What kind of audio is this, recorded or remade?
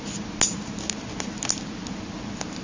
recorded